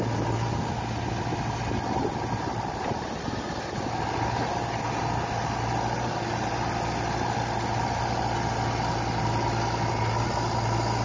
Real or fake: real